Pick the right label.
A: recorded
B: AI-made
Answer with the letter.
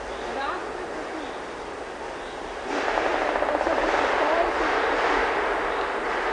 A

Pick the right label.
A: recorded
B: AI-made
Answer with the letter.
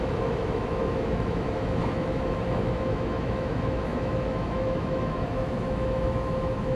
B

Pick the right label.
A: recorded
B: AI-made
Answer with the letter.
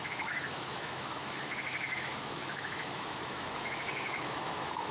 B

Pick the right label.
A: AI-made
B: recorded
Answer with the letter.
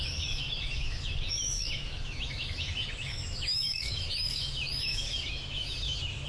A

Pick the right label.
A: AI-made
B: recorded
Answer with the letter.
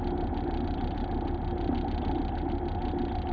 B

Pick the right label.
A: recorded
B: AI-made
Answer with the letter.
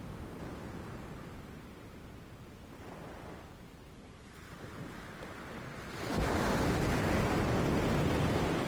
A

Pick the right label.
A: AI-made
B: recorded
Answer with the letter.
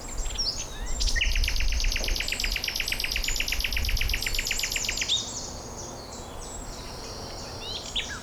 B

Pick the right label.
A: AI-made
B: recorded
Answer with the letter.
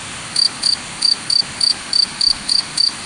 A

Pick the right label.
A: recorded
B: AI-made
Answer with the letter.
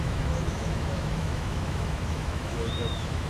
B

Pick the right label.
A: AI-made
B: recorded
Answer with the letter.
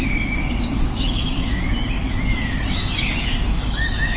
A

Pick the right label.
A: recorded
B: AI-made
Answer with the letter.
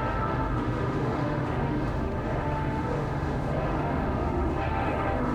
B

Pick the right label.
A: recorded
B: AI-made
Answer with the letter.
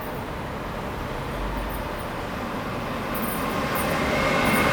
A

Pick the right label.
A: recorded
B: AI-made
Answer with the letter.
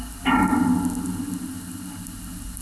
A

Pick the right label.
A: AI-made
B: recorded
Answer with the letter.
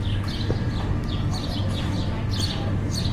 B